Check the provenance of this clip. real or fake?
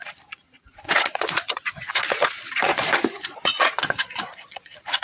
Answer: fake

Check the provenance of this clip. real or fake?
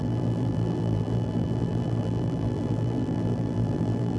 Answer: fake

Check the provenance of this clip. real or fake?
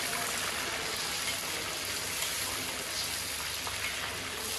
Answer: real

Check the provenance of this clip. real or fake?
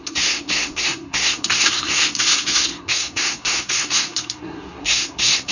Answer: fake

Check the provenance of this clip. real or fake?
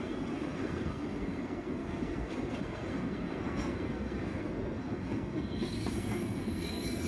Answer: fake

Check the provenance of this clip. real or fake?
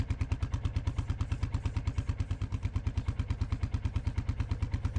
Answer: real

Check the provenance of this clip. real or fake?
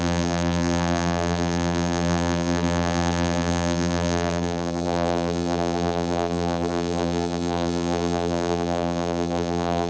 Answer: fake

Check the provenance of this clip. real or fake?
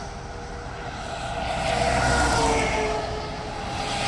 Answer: real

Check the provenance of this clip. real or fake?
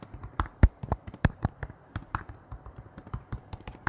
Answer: fake